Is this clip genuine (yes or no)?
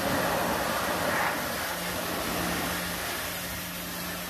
yes